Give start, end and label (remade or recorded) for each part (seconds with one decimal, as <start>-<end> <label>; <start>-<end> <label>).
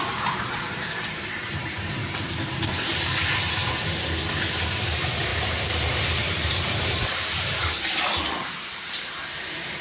0.0-2.0 remade; 2.0-4.6 recorded; 4.6-9.8 remade